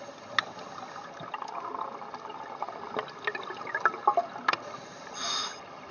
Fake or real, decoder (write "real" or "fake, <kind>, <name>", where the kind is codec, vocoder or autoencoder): real